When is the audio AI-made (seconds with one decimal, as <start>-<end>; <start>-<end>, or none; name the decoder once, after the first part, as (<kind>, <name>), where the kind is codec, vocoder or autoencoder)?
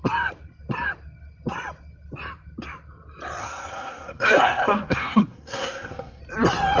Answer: 3.4-6.2 (codec, SNAC)